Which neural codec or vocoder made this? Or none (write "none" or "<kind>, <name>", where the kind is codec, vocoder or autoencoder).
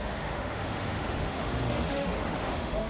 autoencoder, DAC-VAE